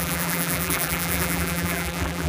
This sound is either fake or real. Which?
fake